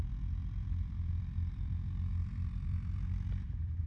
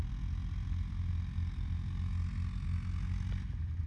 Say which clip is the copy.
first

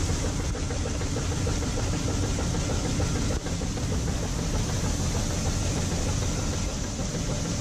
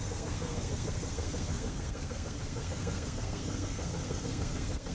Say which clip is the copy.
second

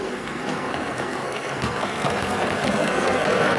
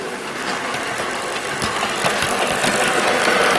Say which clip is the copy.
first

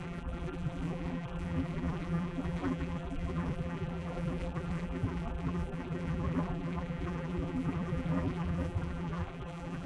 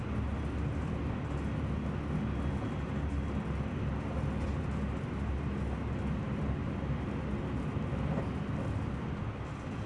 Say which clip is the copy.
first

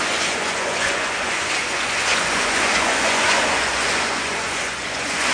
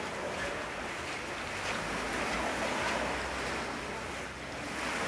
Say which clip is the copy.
first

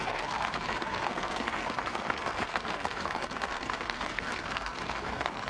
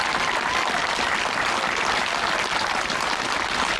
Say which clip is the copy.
first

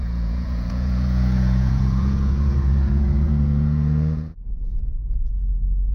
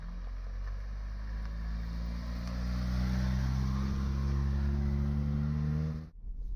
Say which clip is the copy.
first